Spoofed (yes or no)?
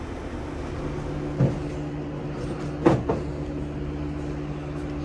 no